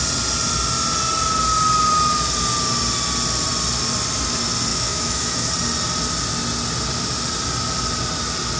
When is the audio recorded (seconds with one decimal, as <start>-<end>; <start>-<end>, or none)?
0.0-4.7; 5.5-8.6